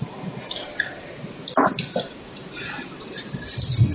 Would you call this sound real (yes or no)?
yes